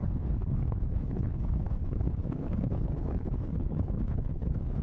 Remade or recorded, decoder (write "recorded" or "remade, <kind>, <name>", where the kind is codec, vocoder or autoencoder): remade, codec, HILCodec